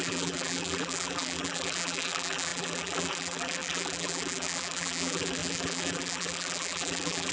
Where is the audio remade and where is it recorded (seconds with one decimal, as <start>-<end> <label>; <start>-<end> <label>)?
0.0-7.3 remade